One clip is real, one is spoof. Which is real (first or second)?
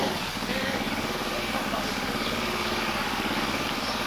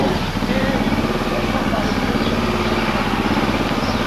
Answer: second